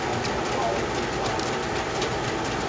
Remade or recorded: recorded